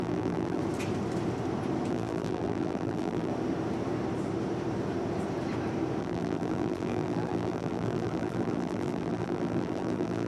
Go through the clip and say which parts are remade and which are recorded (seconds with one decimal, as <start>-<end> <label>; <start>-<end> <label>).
0.0-0.6 remade; 0.6-1.9 recorded; 1.9-3.3 remade; 3.3-6.0 recorded; 6.0-10.3 remade